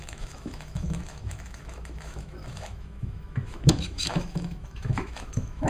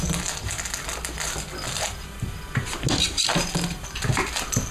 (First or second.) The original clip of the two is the second